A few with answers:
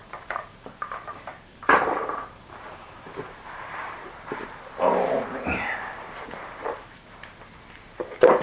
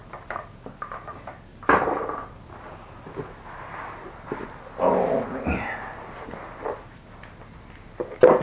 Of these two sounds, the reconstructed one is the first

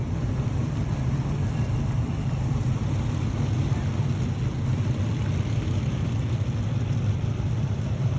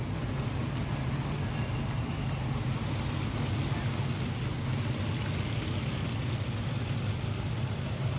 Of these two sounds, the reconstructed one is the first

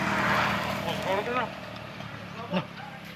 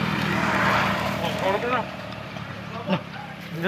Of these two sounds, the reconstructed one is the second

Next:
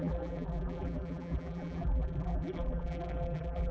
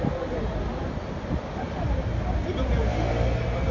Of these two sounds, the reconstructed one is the first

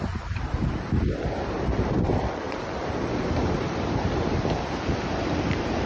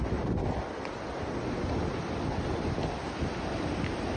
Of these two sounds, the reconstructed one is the first